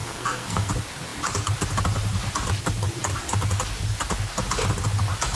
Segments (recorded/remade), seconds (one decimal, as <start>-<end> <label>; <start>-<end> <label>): 0.0-0.7 remade; 0.7-5.3 recorded